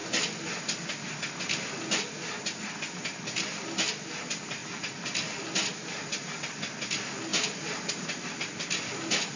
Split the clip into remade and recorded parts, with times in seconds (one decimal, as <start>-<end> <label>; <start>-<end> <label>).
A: 0.0-9.4 recorded